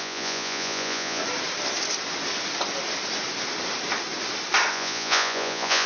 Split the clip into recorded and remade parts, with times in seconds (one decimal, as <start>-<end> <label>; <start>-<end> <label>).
0.0-1.2 remade; 1.2-4.7 recorded; 4.7-5.9 remade